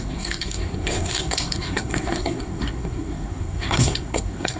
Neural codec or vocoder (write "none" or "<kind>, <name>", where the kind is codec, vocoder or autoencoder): codec, SNAC